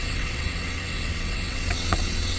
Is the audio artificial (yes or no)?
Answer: yes